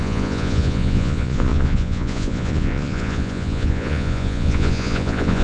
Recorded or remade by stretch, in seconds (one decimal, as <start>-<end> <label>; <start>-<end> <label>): 0.0-5.4 remade